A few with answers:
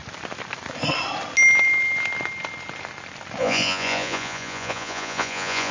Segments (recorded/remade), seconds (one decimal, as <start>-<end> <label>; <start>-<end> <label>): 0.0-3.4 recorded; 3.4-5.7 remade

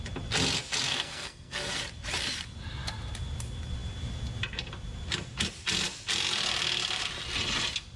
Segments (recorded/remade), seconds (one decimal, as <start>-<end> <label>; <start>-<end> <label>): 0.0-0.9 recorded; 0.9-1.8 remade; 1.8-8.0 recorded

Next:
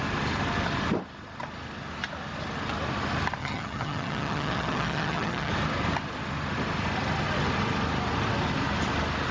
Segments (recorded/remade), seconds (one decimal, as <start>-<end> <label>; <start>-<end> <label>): 0.0-3.4 recorded; 3.4-5.5 remade; 5.5-9.3 recorded